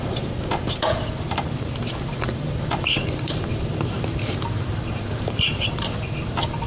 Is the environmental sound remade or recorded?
remade